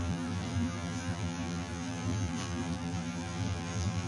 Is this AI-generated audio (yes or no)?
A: yes